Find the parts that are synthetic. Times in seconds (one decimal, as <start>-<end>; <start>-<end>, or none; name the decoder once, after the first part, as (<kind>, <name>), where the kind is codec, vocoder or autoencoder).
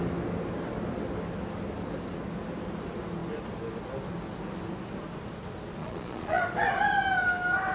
5.8-6.4 (vocoder, Vocos)